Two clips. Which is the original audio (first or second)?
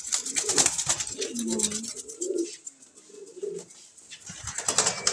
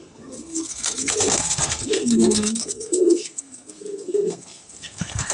first